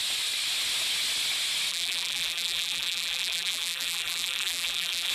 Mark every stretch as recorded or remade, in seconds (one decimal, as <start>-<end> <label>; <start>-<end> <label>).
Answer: 0.0-1.7 recorded; 1.7-5.1 remade

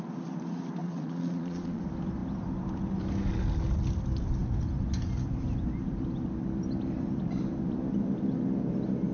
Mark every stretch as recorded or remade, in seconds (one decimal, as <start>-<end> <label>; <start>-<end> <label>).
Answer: 0.0-0.8 recorded; 0.8-1.8 remade; 1.8-9.1 recorded

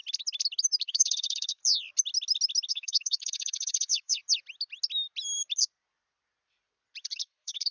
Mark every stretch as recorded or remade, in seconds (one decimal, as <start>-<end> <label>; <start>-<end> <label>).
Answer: 0.0-0.8 recorded; 0.8-1.6 remade; 1.6-2.7 recorded; 2.7-4.2 remade; 4.2-7.0 recorded; 7.0-7.7 remade

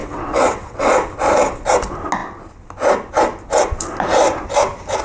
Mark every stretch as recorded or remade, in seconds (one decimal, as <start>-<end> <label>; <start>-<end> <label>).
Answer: 0.0-0.9 remade; 0.9-5.0 recorded

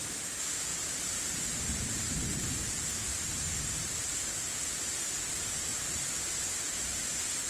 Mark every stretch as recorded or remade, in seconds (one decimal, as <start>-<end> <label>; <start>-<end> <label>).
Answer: 0.0-0.7 recorded; 0.7-2.1 remade; 2.1-3.1 recorded; 3.1-5.1 remade; 5.1-5.7 recorded; 5.7-7.5 remade

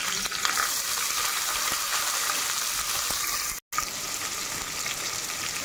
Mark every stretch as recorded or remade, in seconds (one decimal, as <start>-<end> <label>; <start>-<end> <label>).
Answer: 0.0-1.9 remade; 1.9-5.6 recorded